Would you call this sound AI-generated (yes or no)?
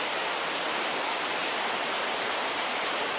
no